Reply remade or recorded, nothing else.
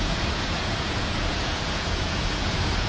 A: remade